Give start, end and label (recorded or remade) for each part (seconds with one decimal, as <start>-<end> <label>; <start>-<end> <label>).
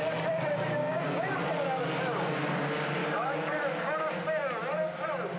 0.0-0.8 recorded; 0.8-1.4 remade; 1.4-3.0 recorded; 3.0-3.6 remade; 3.6-5.4 recorded